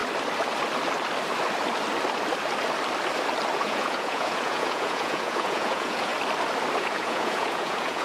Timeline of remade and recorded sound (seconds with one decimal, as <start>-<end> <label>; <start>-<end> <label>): 0.0-3.6 recorded; 3.6-6.1 remade; 6.1-6.8 recorded; 6.8-8.0 remade